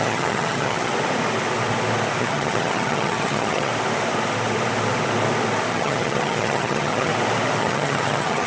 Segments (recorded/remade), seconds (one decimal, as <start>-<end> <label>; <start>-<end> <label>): 0.0-0.9 remade; 0.9-2.2 recorded; 2.2-3.7 remade; 3.7-5.7 recorded; 5.7-7.1 remade; 7.1-7.6 recorded; 7.6-8.5 remade